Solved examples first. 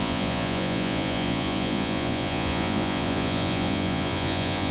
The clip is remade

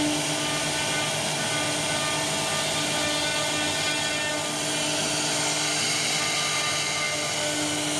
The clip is recorded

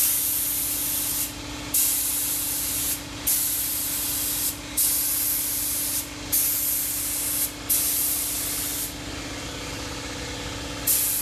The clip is recorded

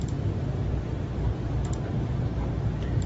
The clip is remade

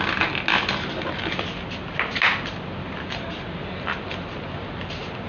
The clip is recorded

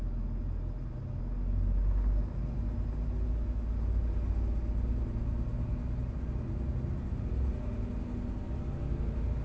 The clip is recorded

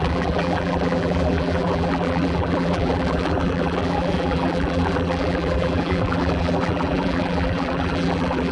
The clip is remade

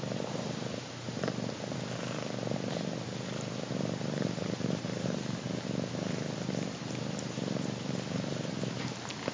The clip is recorded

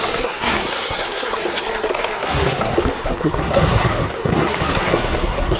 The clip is remade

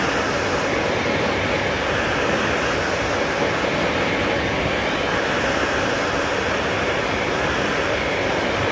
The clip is recorded